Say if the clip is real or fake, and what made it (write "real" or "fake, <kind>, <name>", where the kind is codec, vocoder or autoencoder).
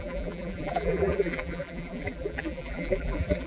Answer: fake, vocoder, BigVGAN v2